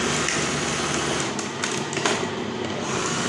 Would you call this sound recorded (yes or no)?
yes